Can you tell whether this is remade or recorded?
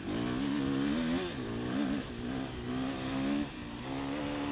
recorded